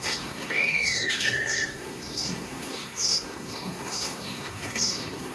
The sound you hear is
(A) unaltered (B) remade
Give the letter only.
B